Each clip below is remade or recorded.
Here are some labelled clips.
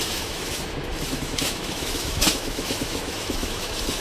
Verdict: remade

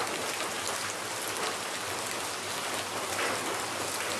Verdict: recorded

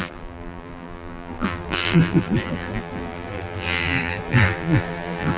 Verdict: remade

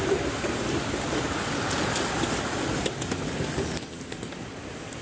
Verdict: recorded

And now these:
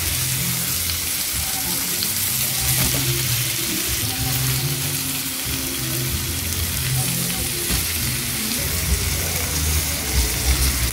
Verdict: recorded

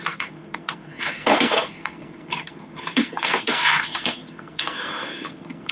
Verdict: remade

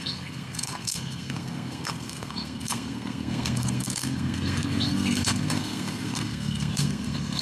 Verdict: remade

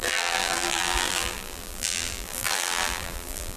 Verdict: remade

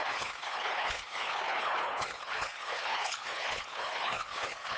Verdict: remade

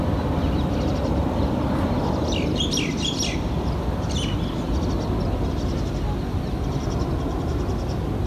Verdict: recorded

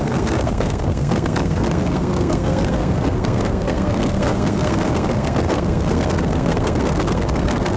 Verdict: remade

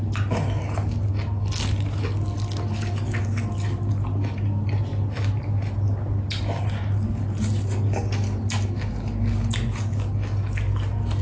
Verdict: recorded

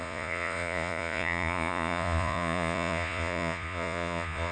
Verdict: remade